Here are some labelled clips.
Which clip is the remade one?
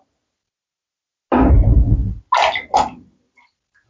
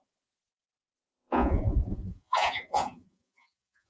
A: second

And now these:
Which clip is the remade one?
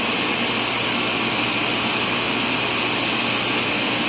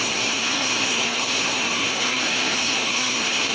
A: second